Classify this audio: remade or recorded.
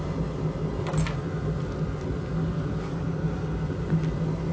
recorded